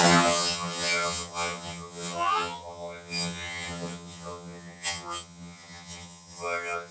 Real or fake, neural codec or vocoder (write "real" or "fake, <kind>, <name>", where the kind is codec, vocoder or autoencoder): fake, vocoder, HiFi-GAN